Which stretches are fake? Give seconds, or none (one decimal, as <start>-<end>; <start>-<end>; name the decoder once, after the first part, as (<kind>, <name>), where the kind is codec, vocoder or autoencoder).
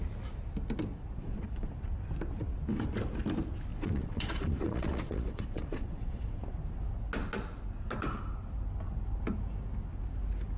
0.9-1.7 (vocoder, Vocos); 3.7-6.3